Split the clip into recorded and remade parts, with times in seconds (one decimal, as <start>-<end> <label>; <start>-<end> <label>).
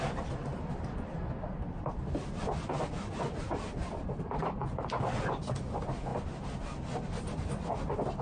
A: 0.0-8.2 recorded